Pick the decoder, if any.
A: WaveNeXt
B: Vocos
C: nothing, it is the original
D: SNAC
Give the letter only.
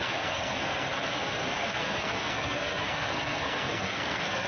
D